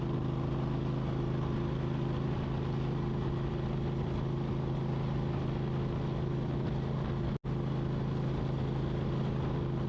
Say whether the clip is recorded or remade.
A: recorded